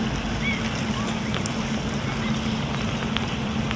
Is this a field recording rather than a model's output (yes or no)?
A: yes